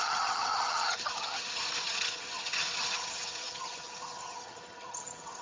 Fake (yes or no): yes